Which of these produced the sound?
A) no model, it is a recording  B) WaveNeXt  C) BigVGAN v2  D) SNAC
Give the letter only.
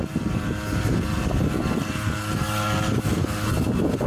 A